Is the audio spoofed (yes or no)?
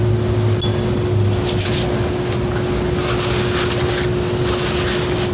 no